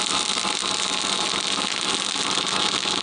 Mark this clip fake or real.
real